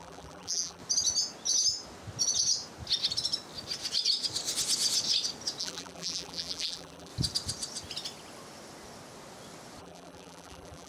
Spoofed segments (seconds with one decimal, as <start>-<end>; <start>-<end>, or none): 0.0-0.8; 5.6-7.1; 9.8-10.9